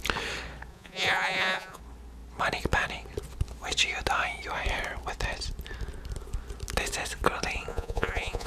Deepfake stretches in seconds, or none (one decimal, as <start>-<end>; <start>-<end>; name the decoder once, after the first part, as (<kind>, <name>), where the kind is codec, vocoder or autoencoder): 0.7-1.8 (vocoder, Vocos); 7.7-8.5

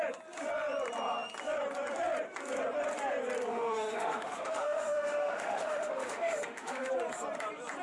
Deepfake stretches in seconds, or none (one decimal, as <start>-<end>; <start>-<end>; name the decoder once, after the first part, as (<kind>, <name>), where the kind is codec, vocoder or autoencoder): 3.5-6.9 (autoencoder, DAC-VAE)